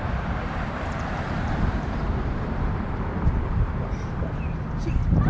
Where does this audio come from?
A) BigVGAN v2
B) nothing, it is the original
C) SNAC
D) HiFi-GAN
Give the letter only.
A